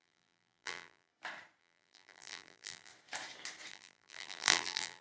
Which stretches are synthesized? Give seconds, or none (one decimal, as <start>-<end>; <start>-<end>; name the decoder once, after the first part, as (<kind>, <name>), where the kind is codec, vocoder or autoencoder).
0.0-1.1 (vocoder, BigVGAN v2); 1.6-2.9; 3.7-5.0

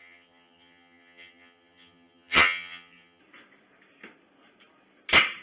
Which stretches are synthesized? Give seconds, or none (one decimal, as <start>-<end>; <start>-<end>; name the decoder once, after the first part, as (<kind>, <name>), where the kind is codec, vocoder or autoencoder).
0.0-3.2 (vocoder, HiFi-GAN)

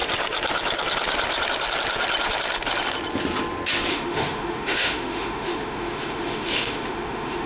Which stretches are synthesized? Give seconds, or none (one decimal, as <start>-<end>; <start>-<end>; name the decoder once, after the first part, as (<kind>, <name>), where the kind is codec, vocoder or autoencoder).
3.9-7.5 (autoencoder, DAC-VAE)

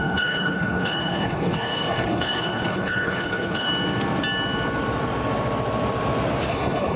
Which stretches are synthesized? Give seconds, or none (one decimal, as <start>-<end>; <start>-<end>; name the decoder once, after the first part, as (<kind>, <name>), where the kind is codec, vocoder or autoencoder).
0.0-3.7 (codec, HILCodec); 6.5-7.0

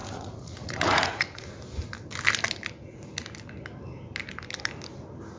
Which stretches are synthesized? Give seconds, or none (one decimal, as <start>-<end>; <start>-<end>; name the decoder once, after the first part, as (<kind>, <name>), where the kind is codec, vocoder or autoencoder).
0.0-1.5 (vocoder, Vocos)

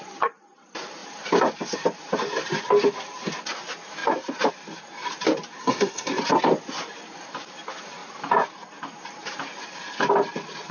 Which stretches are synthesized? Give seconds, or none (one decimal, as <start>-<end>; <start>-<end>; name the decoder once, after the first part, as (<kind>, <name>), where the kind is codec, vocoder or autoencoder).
5.6-6.1 (codec, SNAC)

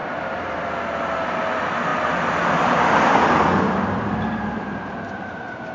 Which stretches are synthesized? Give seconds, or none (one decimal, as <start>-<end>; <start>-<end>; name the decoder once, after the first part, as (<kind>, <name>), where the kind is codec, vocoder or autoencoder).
0.0-0.7 (vocoder, BigVGAN v2)